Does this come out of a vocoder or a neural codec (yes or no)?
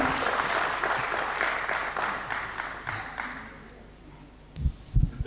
no